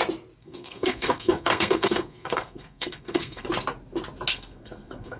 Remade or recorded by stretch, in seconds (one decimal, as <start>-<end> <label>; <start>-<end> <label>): 0.0-0.4 recorded; 0.4-3.5 remade; 3.5-4.3 recorded; 4.3-5.2 remade